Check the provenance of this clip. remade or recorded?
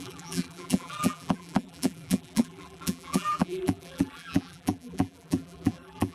remade